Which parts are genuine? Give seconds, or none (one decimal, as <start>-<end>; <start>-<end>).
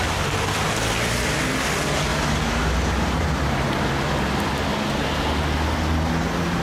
0.0-6.6